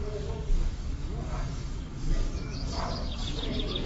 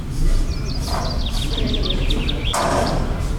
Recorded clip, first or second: second